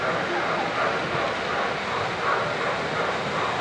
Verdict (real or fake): real